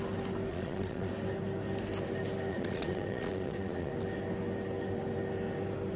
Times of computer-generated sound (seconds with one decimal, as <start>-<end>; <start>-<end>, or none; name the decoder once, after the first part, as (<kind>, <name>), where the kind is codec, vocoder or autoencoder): 0.5-1.1 (vocoder, Vocos); 2.5-3.9